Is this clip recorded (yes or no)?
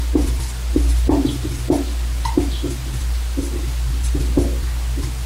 yes